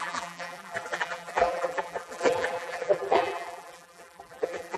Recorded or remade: remade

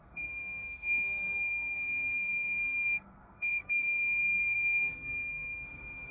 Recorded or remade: remade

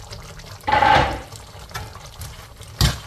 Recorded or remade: recorded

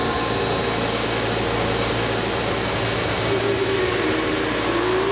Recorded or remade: recorded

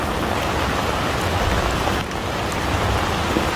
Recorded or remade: recorded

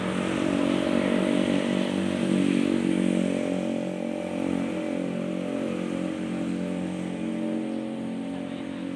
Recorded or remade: recorded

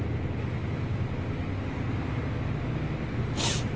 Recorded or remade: recorded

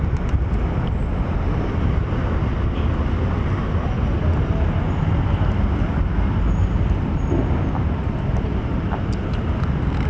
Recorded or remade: recorded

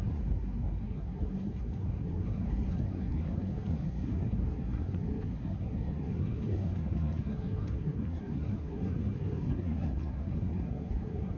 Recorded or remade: remade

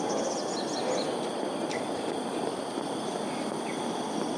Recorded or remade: recorded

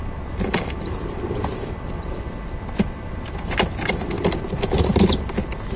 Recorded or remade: recorded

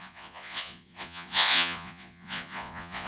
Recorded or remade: remade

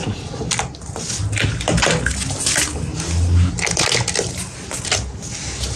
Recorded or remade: recorded